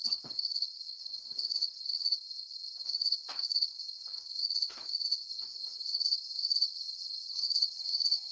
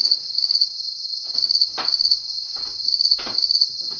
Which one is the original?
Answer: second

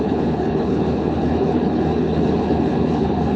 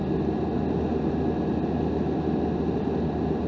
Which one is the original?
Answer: second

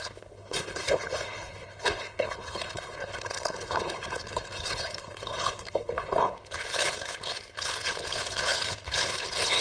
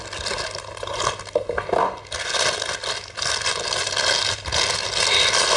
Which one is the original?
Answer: second